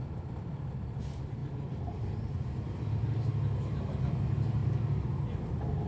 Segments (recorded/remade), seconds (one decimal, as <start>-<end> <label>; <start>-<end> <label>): 0.0-5.9 recorded